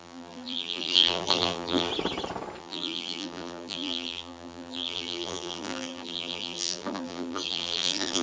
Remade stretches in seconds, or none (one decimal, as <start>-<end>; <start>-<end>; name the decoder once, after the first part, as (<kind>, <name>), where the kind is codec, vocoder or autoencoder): 0.0-1.9 (vocoder, BigVGAN v2); 2.6-8.2